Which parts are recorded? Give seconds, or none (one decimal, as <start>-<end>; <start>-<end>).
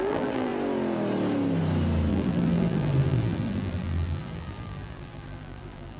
0.5-2.1